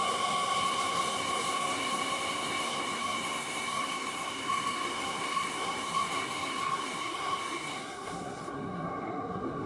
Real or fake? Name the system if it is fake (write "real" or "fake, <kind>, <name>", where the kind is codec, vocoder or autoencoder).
fake, codec, SNAC